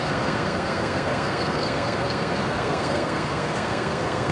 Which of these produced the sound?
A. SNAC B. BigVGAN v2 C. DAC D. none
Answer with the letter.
A